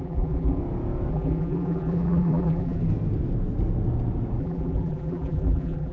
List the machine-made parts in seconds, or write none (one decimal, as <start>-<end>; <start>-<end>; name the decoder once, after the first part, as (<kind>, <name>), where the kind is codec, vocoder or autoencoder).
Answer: 0.0-0.6 (vocoder, BigVGAN v2); 1.1-2.8; 4.4-5.9